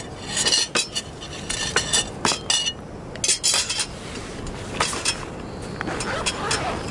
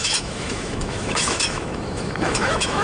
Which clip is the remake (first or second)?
second